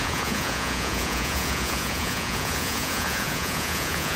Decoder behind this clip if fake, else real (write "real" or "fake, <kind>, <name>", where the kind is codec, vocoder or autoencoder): fake, vocoder, Vocos